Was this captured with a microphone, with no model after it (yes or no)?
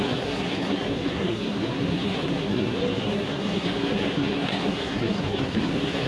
no